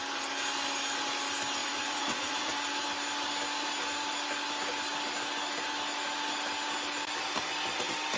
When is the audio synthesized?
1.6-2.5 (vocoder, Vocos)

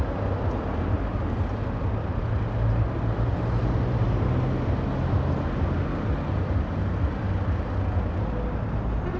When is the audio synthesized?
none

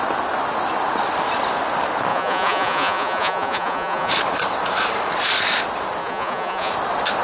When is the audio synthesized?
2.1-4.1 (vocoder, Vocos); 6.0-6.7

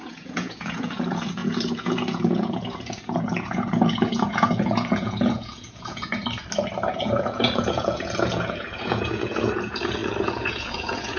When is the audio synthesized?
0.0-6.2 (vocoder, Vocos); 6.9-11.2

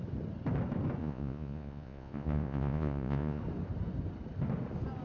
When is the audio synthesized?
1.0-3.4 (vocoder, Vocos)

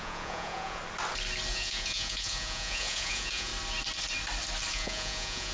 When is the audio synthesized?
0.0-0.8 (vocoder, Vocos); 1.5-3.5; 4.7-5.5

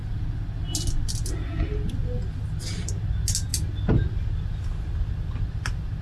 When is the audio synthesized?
none

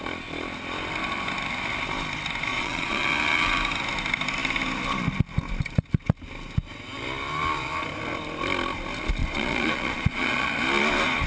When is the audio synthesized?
2.5-3.1 (vocoder, Vocos); 9.2-10.5